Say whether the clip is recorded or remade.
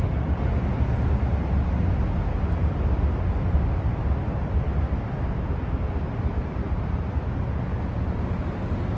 recorded